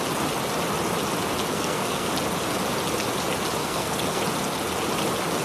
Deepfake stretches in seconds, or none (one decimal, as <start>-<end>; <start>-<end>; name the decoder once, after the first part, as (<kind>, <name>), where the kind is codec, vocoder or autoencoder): 1.5-2.1 (codec, SNAC); 3.6-4.2